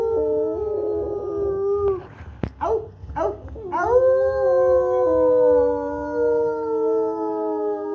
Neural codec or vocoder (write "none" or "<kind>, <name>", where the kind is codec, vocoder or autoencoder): none